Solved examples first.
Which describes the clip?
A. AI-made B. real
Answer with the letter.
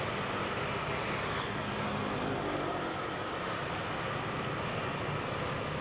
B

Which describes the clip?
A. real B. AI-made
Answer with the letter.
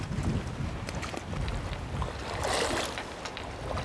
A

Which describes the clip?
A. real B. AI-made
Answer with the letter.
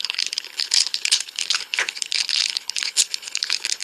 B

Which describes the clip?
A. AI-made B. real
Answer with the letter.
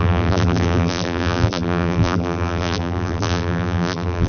A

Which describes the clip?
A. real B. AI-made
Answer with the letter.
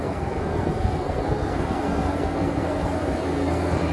B